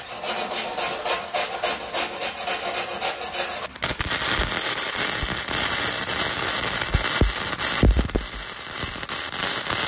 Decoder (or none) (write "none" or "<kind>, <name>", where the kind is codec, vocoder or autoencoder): none